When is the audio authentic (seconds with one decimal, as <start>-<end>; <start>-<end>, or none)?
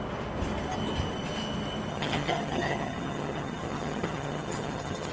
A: 0.0-1.9